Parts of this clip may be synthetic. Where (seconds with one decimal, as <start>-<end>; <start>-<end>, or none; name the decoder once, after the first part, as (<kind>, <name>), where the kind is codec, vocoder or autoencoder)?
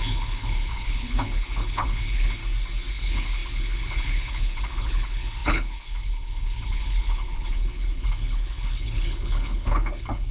0.0-2.4 (codec, HILCodec); 2.9-10.3